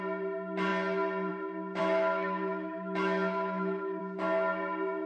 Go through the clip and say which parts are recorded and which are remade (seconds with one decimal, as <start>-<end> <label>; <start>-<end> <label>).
0.0-1.8 recorded; 1.8-4.0 remade; 4.0-5.1 recorded